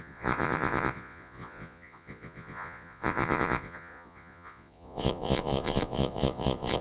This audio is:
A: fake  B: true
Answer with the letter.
A